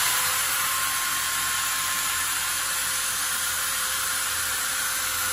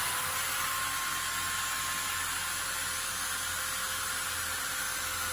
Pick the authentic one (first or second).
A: second